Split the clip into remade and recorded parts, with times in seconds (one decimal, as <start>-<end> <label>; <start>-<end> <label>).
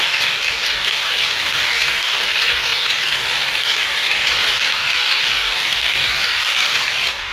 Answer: 0.0-7.3 remade